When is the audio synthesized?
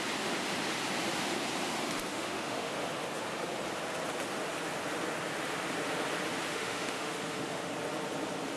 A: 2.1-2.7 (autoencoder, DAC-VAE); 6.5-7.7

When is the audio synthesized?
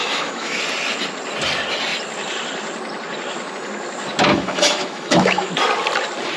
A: 0.0-0.6 (autoencoder, DAC-VAE); 4.3-5.5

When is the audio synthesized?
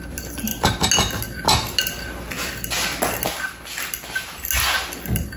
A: none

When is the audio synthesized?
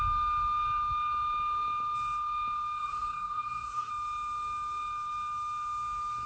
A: 2.8-3.9 (codec, DAC)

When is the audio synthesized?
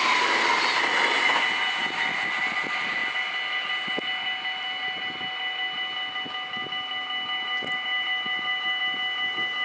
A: none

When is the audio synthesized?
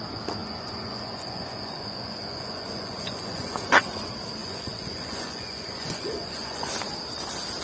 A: 0.4-4.0 (vocoder, Vocos); 4.4-6.7